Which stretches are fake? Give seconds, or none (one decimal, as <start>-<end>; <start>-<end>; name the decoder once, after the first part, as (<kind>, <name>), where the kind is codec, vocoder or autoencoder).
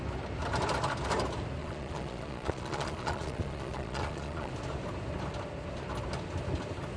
1.6-4.5 (vocoder, Vocos)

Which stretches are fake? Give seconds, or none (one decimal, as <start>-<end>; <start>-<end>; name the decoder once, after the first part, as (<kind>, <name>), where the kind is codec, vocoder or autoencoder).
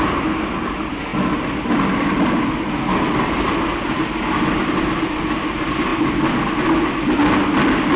none